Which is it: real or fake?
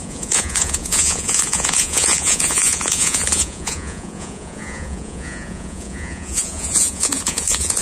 fake